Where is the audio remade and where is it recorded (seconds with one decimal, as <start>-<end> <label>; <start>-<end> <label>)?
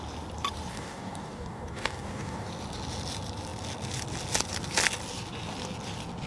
0.0-0.7 recorded; 0.7-2.5 remade; 2.5-6.3 recorded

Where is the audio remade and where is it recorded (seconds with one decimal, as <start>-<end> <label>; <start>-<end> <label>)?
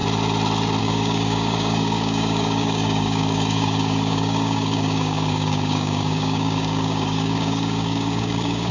0.0-0.8 recorded; 0.8-8.7 remade